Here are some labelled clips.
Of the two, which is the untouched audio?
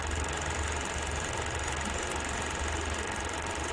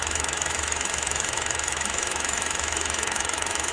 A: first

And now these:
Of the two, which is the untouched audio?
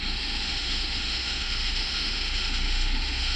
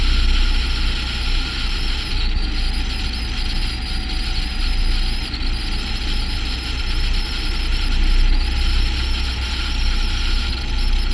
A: second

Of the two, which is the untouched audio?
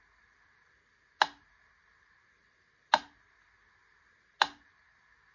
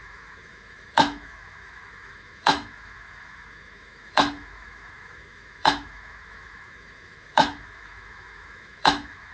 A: first